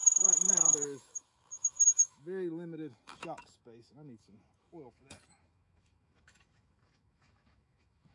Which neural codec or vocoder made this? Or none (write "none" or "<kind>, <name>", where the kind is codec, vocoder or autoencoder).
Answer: autoencoder, DAC-VAE